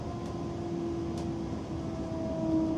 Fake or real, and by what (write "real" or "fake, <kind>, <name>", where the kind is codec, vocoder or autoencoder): real